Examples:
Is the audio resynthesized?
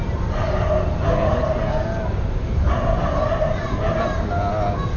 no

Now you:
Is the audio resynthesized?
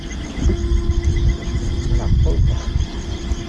no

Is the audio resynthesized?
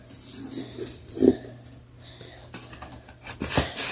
yes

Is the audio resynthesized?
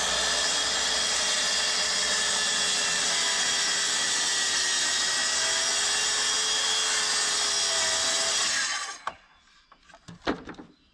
no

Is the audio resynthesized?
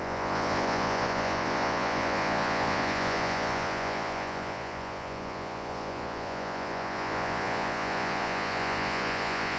yes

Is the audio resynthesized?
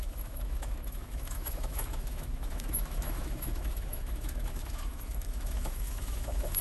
yes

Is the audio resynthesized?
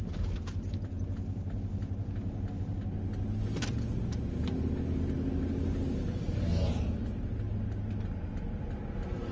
no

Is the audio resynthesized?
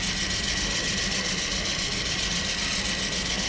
no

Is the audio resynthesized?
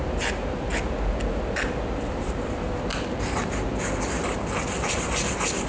no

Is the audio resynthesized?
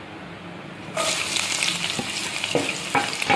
no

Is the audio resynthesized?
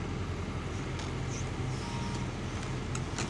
no